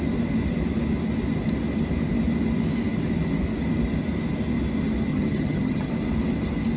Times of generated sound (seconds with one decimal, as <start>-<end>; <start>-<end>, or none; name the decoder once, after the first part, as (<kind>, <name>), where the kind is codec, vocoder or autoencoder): 5.1-5.9 (vocoder, HiFi-GAN)